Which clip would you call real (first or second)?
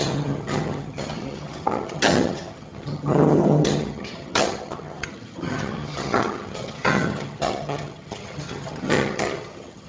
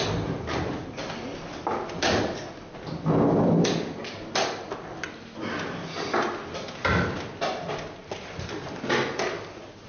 second